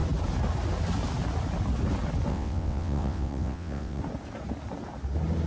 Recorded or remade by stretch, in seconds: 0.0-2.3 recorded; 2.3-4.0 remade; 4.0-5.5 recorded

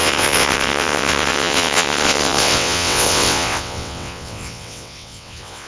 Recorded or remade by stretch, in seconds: 0.0-5.7 remade

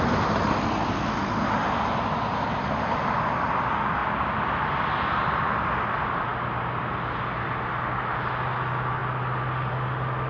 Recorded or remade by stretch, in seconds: 0.0-10.3 recorded

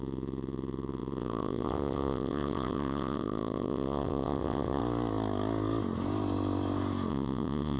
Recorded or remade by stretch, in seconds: 0.0-4.8 remade; 4.8-7.1 recorded; 7.1-7.8 remade